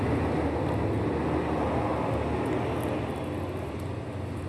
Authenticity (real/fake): real